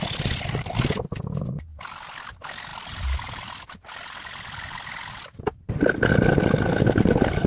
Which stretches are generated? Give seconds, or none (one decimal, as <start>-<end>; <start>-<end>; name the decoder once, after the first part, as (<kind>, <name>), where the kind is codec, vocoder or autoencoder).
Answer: 1.7-2.2 (vocoder, BigVGAN v2); 2.7-3.9